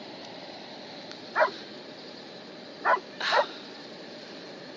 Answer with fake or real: fake